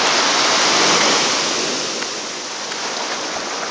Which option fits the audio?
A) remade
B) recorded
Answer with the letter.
A